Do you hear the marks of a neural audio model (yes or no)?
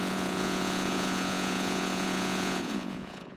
yes